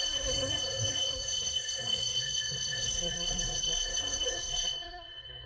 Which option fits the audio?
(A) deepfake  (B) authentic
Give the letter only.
A